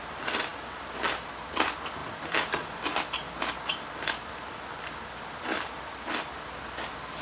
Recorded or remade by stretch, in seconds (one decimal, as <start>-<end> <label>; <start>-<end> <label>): 0.0-0.5 recorded; 0.5-1.3 remade; 1.3-2.0 recorded; 2.0-6.3 remade; 6.3-7.2 recorded